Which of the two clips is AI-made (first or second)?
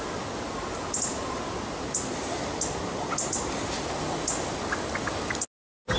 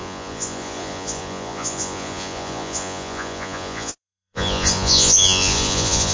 second